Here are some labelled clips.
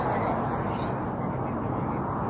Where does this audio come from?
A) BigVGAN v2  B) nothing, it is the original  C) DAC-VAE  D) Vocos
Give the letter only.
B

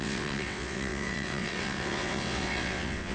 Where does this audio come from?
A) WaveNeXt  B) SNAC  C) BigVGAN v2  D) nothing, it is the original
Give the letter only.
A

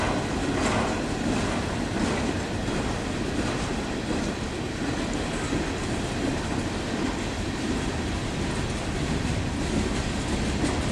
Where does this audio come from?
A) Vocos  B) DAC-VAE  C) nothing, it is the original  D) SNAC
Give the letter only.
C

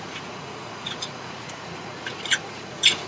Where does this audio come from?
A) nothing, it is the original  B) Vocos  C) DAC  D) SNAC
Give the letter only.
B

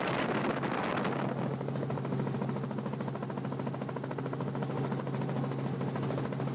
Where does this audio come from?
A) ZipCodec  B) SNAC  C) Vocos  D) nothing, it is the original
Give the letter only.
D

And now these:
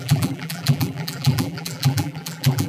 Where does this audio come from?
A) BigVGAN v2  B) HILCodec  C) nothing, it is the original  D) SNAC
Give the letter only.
A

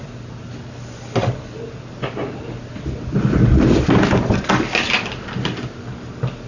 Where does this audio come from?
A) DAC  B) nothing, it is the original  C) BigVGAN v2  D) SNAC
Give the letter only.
B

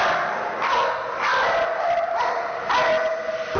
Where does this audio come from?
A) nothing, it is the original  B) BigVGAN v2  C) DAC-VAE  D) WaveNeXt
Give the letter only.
A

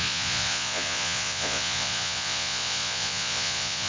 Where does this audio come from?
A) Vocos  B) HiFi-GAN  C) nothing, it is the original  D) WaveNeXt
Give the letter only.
A